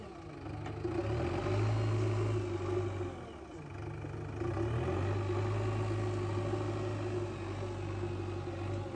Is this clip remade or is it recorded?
recorded